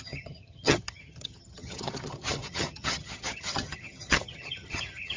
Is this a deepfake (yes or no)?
yes